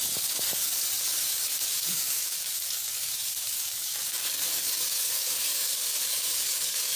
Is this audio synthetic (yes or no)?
yes